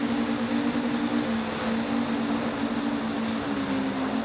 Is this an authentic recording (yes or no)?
yes